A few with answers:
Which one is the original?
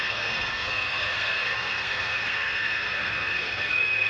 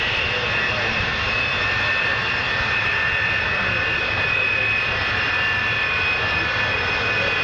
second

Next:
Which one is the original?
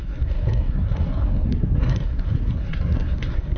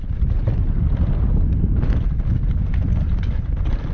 second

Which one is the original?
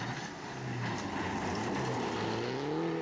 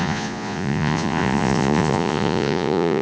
first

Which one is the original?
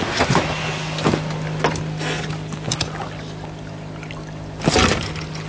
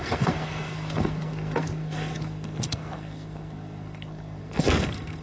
first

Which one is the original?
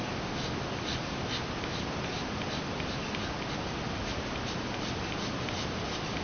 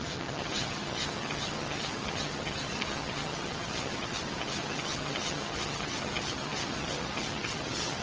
first